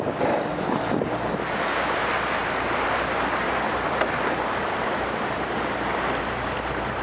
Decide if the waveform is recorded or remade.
recorded